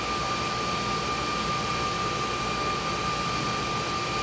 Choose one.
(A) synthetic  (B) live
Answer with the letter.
B